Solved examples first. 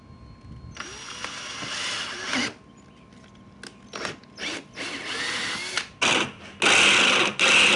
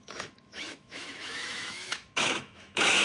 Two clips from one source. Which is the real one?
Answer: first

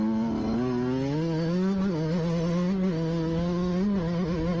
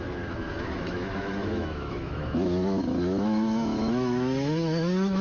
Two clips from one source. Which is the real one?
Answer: first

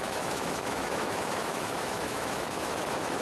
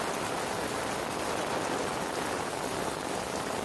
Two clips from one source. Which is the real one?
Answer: second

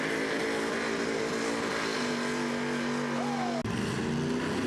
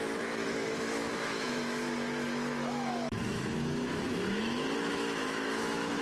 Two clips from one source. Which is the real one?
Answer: first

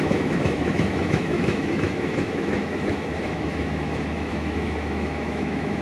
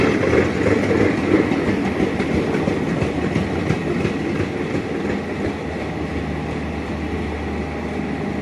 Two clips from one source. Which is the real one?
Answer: second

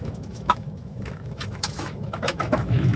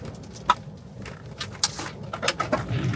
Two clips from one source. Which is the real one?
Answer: second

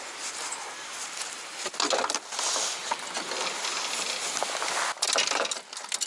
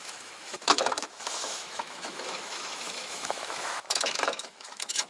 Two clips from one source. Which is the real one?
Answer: first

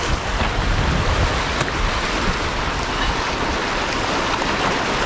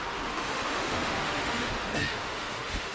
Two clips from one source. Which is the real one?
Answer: first